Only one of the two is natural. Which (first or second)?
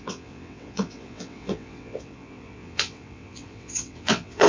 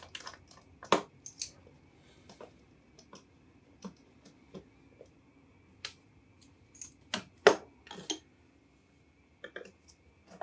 second